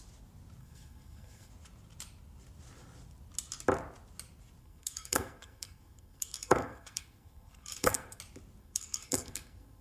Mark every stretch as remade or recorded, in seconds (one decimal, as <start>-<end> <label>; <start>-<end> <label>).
0.0-0.6 recorded; 0.6-1.5 remade; 1.5-4.6 recorded; 4.6-8.2 remade; 8.2-8.6 recorded; 8.6-9.8 remade